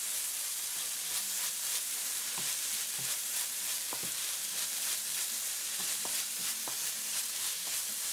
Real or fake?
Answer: fake